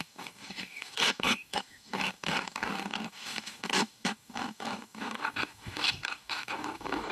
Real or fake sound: fake